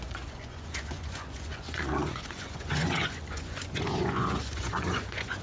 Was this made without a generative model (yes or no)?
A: no